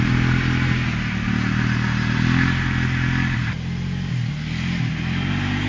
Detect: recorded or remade recorded